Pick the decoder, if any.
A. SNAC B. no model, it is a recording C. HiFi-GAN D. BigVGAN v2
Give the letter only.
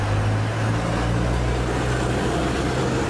B